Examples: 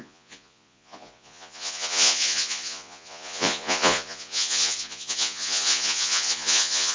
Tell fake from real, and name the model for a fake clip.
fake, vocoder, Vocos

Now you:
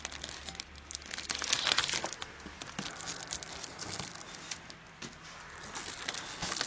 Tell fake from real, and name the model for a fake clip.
real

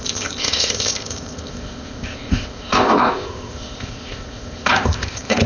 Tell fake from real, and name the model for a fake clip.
fake, codec, ZipCodec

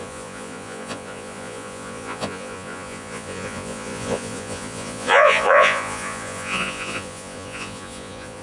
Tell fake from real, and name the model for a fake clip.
fake, vocoder, Vocos